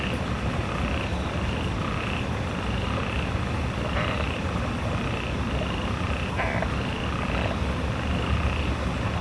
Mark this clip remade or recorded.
recorded